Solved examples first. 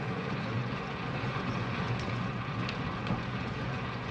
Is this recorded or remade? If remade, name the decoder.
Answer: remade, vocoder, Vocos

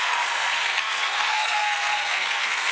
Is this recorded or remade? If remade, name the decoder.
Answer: remade, codec, SNAC